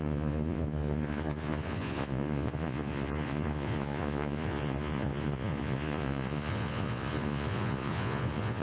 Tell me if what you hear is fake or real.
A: fake